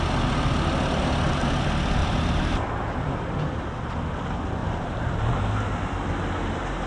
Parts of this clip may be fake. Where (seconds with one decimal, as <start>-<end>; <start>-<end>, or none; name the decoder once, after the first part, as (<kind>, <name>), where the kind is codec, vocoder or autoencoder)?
2.0-3.1 (vocoder, BigVGAN v2); 4.6-5.3